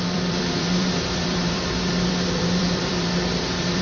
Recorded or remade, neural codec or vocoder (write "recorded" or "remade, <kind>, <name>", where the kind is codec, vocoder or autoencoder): remade, vocoder, BigVGAN v2